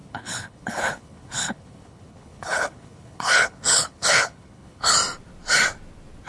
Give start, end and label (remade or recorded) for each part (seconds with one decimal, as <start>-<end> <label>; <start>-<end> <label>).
0.0-5.0 remade; 5.0-6.3 recorded